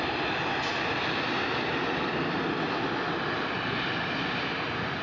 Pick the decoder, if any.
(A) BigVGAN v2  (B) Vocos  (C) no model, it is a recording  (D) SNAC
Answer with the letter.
C